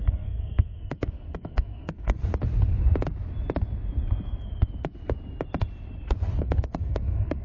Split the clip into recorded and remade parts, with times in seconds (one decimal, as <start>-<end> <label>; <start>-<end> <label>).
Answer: 0.0-2.2 remade; 2.2-6.4 recorded; 6.4-7.4 remade